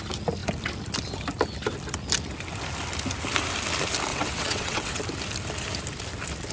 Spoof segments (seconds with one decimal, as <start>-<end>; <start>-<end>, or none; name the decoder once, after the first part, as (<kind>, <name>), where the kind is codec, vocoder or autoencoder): 4.1-5.0 (vocoder, WaveNeXt)